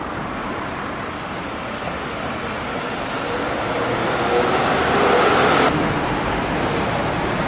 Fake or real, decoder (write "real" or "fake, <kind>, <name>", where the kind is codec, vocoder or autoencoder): fake, vocoder, BigVGAN v2